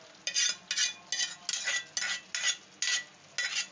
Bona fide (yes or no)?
yes